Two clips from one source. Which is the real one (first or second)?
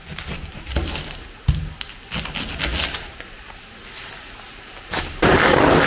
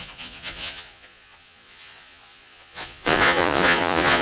first